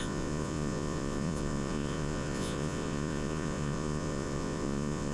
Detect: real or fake fake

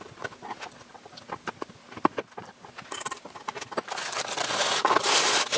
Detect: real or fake real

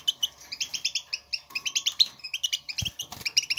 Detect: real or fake fake